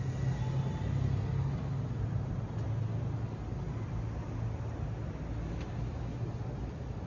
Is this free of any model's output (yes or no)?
yes